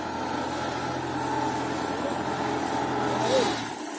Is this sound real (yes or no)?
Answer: yes